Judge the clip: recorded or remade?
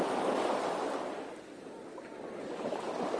recorded